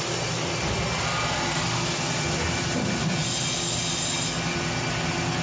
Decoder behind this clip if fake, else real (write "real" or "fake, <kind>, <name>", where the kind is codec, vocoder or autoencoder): real